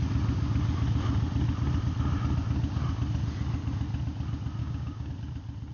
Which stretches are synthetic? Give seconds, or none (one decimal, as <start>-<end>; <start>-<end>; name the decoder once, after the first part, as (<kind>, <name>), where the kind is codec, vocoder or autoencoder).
4.6-5.1 (codec, DAC)